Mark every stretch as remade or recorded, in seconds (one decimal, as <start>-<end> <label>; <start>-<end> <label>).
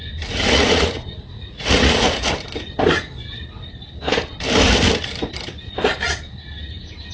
0.0-0.4 recorded; 0.4-2.3 remade; 2.3-7.1 recorded